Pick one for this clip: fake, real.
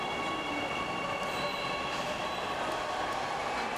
real